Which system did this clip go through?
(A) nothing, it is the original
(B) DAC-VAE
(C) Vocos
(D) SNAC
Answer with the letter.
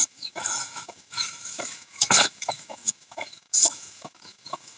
B